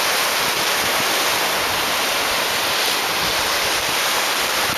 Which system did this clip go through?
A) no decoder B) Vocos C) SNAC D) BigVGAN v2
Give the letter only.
A